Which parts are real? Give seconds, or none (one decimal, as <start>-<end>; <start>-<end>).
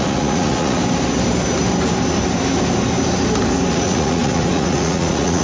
0.8-3.7